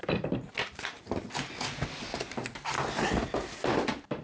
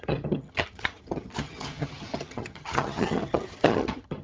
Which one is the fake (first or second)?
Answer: second